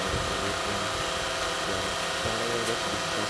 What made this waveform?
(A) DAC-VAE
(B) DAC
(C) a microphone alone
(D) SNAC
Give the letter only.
C